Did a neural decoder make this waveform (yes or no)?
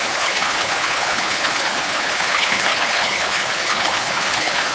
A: yes